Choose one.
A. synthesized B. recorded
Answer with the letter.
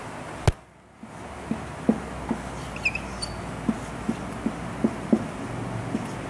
B